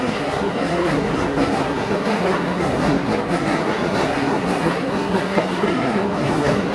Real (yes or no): no